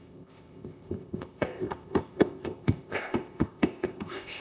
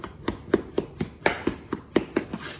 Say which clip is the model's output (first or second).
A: first